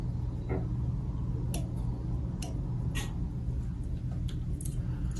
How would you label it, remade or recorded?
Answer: recorded